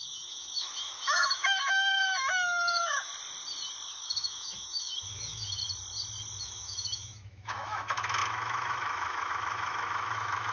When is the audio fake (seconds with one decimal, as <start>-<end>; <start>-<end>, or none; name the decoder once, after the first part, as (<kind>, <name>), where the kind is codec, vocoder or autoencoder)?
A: 0.0-3.1 (autoencoder, DAC-VAE); 4.0-5.6; 6.4-10.5